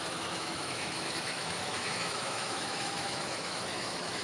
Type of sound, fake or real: fake